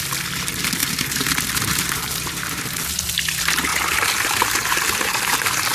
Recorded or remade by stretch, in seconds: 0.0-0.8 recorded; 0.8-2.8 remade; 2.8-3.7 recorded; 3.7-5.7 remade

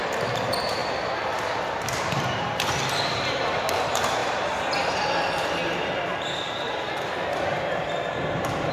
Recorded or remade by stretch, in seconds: 0.0-0.8 recorded; 0.8-2.5 remade; 2.5-4.2 recorded; 4.2-8.7 remade